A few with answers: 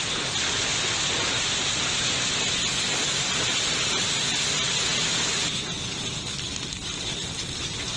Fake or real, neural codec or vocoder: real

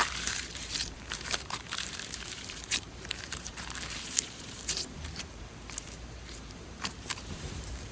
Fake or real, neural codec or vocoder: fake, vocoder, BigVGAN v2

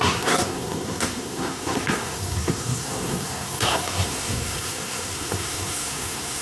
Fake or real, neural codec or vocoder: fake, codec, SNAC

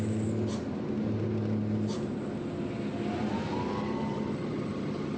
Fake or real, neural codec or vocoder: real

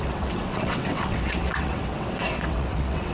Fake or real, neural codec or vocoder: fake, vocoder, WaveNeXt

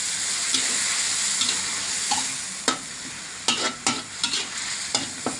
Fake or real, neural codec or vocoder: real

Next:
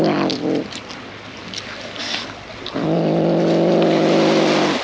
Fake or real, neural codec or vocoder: real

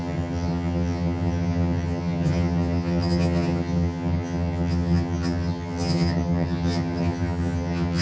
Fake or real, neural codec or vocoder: fake, vocoder, HiFi-GAN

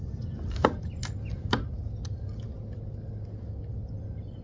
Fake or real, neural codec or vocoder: real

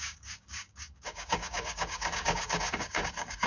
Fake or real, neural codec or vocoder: fake, codec, DAC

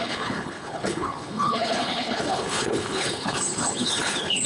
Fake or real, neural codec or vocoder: fake, codec, HILCodec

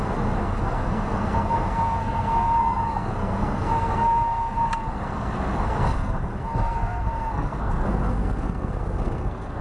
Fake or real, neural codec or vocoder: fake, codec, SNAC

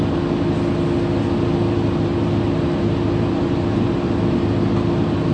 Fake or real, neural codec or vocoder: real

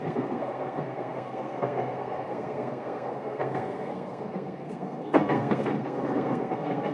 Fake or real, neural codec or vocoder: fake, codec, SNAC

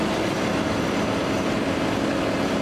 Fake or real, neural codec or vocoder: real